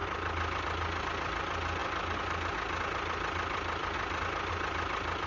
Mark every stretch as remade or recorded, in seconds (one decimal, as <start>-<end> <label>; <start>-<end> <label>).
0.0-5.3 recorded

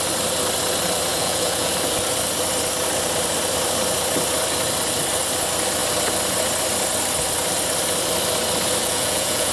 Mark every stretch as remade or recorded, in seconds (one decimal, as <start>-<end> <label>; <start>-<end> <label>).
0.0-1.1 recorded; 1.1-1.7 remade; 1.7-8.8 recorded; 8.8-9.5 remade

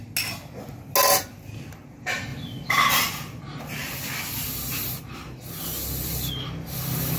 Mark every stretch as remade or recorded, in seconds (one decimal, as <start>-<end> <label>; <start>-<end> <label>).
0.0-7.2 recorded